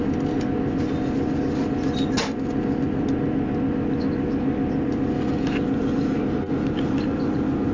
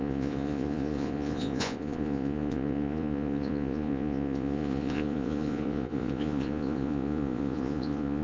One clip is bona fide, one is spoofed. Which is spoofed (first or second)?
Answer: second